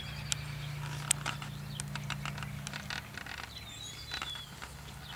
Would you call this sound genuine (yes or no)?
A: yes